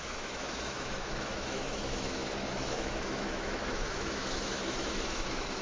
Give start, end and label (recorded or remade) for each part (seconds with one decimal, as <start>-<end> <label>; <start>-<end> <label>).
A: 0.0-5.6 remade